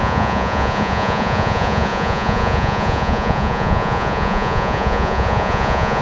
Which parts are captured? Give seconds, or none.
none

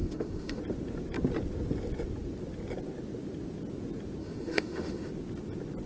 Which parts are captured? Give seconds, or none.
0.6-4.2; 5.1-5.9

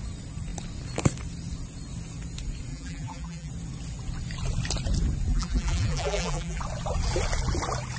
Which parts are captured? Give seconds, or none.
0.0-2.7; 3.5-5.3; 6.6-8.0

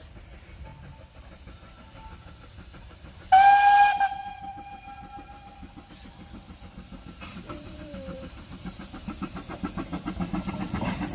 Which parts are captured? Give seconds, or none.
0.0-7.3; 9.3-11.1